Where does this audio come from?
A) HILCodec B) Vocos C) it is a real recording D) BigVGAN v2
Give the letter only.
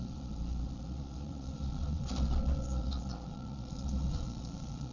B